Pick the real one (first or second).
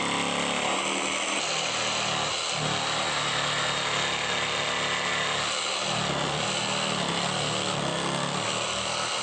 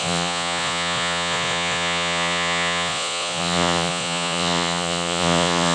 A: first